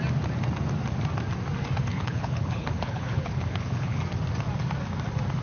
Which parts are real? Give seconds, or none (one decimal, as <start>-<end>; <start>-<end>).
0.0-1.9; 4.0-5.4